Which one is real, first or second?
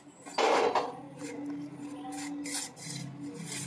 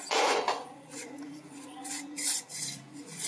first